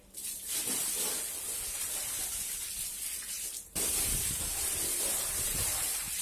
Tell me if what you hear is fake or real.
real